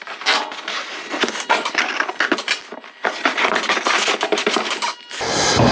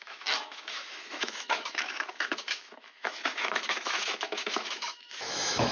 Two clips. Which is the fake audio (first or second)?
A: second